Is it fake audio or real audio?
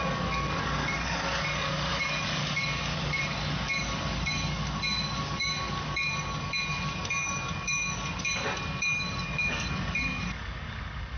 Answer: fake